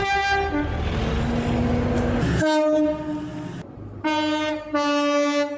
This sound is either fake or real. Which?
real